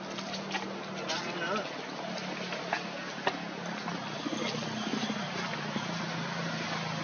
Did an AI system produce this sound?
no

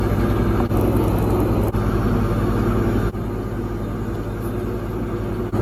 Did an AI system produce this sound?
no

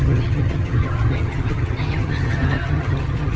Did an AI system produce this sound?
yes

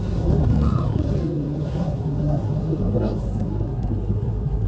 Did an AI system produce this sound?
yes